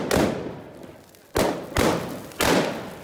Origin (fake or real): real